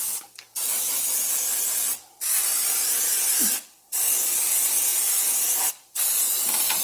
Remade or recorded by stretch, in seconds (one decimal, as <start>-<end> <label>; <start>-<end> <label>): 0.0-6.8 recorded

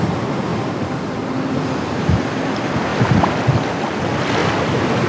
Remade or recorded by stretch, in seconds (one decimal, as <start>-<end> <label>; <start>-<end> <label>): 0.0-5.1 recorded